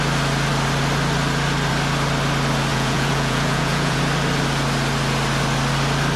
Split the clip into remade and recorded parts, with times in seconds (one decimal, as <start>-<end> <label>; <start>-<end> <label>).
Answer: 0.0-2.7 recorded; 2.7-4.0 remade; 4.0-6.2 recorded